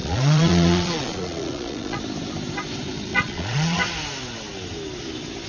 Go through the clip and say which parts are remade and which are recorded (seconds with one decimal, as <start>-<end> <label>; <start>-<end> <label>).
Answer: 0.0-2.0 remade; 2.0-3.1 recorded; 3.1-3.8 remade; 3.8-5.5 recorded